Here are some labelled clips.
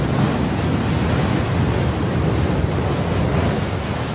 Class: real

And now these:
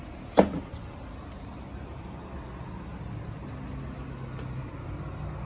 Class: real